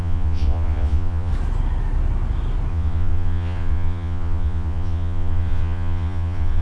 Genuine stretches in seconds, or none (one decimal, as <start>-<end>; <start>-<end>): 1.3-2.7